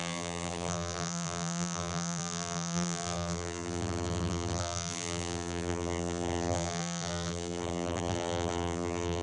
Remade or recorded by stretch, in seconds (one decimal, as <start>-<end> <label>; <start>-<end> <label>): 0.0-9.2 remade